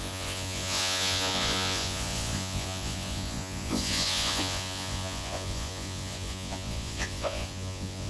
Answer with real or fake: fake